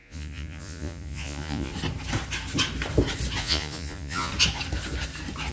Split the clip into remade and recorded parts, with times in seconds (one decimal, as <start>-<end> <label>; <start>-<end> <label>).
0.0-1.7 remade; 1.7-3.4 recorded; 3.4-4.3 remade; 4.3-5.5 recorded